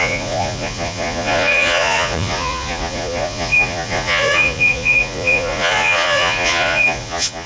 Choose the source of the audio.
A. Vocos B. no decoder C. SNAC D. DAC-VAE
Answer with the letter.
A